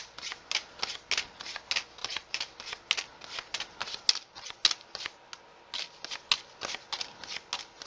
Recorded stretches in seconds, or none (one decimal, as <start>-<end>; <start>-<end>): 0.0-2.0; 2.6-7.9